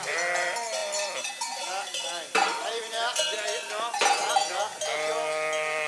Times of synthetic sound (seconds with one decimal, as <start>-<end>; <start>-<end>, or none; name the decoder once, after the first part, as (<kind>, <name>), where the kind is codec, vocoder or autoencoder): 0.0-5.9 (vocoder, BigVGAN v2)